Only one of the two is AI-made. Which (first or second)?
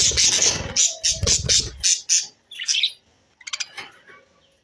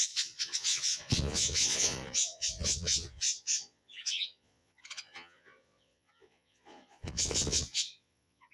second